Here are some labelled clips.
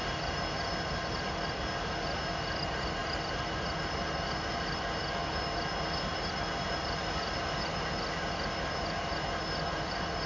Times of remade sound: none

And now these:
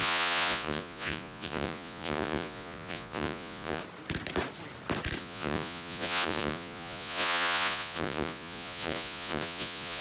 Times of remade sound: 0.0-3.8 (vocoder, Vocos); 5.2-10.0

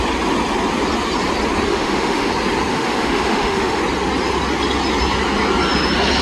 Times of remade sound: 1.7-2.3 (autoencoder, DAC-VAE); 2.7-3.8